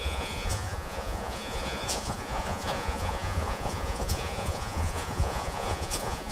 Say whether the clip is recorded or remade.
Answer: remade